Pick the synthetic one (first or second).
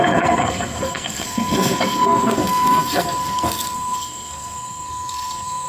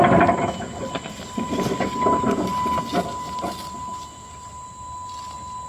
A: first